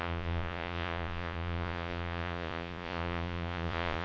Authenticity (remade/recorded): remade